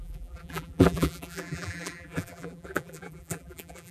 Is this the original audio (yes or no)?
no